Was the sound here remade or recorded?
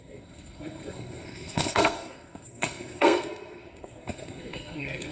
remade